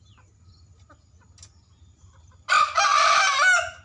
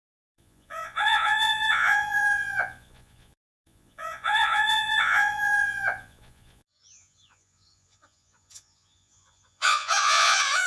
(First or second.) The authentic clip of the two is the first